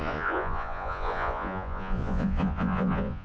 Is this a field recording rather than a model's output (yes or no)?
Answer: no